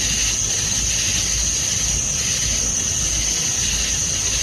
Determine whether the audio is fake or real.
real